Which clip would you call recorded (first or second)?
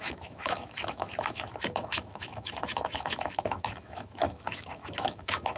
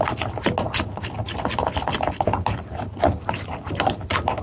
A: second